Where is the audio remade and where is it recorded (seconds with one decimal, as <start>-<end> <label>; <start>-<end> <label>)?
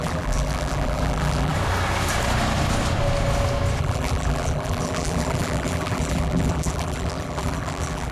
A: 0.0-1.5 remade; 1.5-3.8 recorded; 3.8-8.1 remade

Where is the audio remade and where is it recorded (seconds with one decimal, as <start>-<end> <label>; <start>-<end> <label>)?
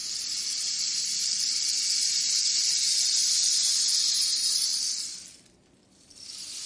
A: 0.0-4.0 recorded; 4.0-4.7 remade; 4.7-5.9 recorded; 5.9-6.7 remade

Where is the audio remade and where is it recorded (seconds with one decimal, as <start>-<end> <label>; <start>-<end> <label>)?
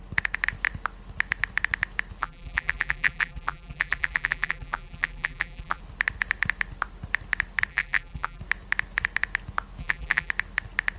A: 0.0-2.2 recorded; 2.2-5.8 remade; 5.8-7.7 recorded; 7.7-8.4 remade; 8.4-9.8 recorded; 9.8-10.3 remade; 10.3-11.0 recorded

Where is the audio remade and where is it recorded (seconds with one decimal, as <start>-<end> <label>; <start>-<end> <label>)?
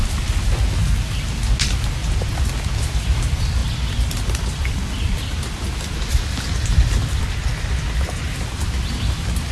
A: 0.0-2.0 recorded; 2.0-2.5 remade; 2.5-3.6 recorded; 3.6-5.6 remade; 5.6-9.5 recorded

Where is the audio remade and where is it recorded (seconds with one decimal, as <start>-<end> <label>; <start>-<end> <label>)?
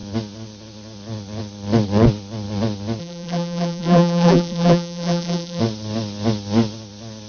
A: 0.0-3.0 recorded; 3.0-5.6 remade; 5.6-7.3 recorded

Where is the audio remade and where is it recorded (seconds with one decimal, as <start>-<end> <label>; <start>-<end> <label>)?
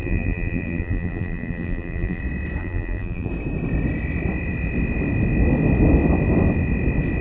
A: 0.0-2.2 remade; 2.2-2.6 recorded; 2.6-3.3 remade; 3.3-7.2 recorded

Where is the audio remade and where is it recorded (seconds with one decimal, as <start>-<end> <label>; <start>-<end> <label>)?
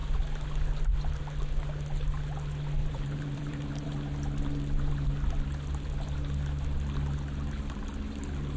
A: 0.0-2.8 recorded; 2.8-3.9 remade; 3.9-8.6 recorded